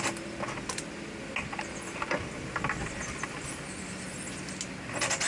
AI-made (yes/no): no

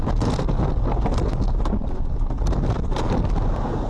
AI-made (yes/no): no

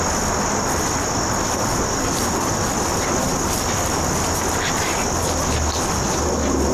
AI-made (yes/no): no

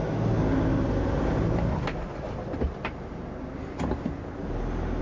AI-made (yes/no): no